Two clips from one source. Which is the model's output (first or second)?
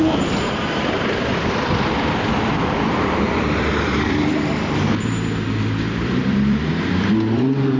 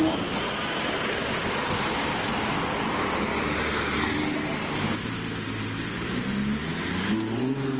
first